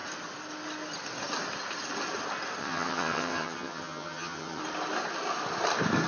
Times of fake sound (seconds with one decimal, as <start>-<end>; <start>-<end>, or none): 2.6-4.6